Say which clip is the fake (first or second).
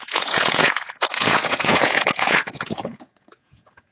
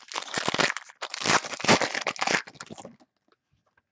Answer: first